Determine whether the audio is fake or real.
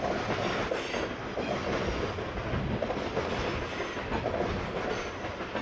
real